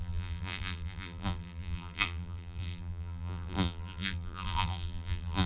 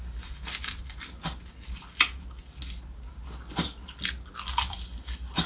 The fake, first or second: first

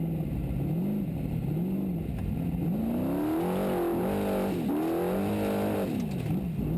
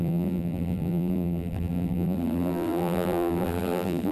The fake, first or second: second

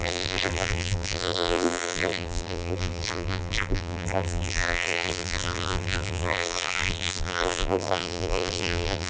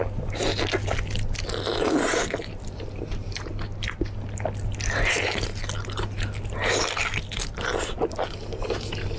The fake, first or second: first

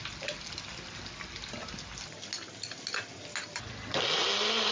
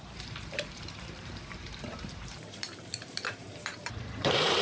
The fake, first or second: second